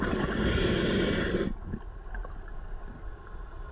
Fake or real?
real